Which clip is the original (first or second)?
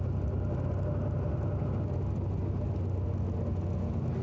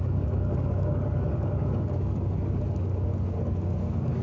first